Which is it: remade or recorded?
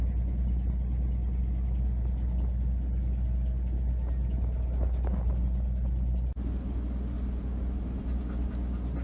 recorded